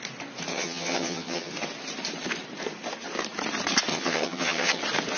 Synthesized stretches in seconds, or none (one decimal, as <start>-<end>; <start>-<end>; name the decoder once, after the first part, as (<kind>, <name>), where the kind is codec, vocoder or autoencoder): 0.5-1.5 (vocoder, HiFi-GAN); 3.9-4.8